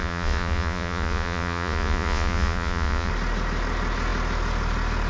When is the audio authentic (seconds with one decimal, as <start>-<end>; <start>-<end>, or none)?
3.1-5.1